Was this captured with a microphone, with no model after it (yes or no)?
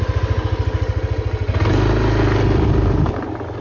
yes